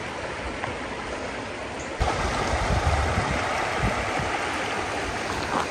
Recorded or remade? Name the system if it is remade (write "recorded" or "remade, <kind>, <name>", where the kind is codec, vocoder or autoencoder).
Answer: recorded